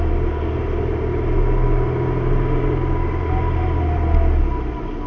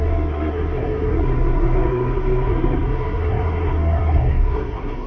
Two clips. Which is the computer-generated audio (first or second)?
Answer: second